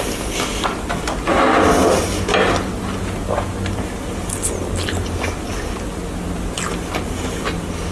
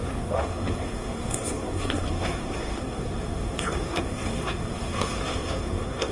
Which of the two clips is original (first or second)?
first